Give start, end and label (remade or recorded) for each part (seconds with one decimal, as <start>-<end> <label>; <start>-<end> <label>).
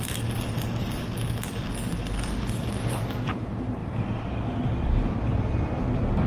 0.0-1.6 recorded; 1.6-3.0 remade; 3.0-6.3 recorded